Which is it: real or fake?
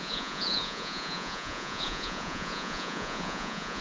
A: fake